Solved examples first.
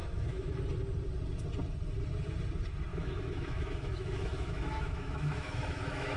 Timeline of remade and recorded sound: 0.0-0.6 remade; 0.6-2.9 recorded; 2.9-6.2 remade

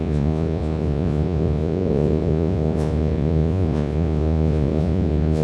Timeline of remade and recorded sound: 0.0-5.4 remade